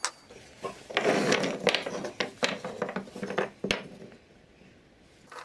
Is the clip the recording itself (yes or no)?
yes